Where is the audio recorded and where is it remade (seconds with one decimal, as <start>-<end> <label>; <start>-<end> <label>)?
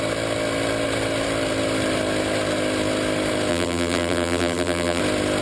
0.0-3.5 recorded; 3.5-5.0 remade; 5.0-5.4 recorded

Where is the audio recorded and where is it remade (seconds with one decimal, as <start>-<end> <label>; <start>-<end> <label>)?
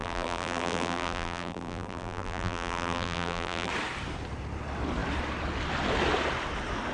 0.0-3.7 remade; 3.7-6.9 recorded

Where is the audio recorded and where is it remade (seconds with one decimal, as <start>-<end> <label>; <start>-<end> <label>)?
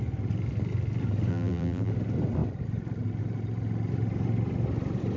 0.0-1.3 recorded; 1.3-1.9 remade; 1.9-5.2 recorded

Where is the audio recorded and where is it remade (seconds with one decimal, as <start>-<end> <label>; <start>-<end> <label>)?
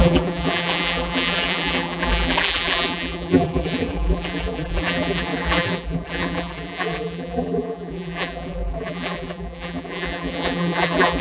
0.0-11.2 remade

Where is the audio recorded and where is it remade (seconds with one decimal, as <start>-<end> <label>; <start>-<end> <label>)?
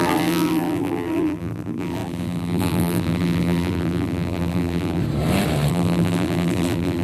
0.0-5.0 remade; 5.0-5.7 recorded; 5.7-7.0 remade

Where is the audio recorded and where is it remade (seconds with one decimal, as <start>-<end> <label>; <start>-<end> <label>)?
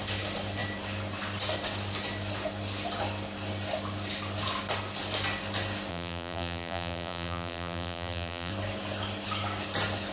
0.0-5.9 recorded; 5.9-8.5 remade; 8.5-10.1 recorded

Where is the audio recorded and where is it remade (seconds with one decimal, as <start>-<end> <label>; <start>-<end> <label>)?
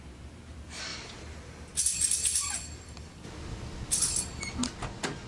0.0-0.9 recorded; 0.9-4.1 remade; 4.1-5.3 recorded